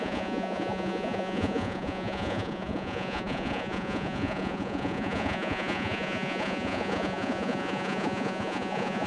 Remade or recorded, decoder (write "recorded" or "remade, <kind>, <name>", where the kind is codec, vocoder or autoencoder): remade, vocoder, Vocos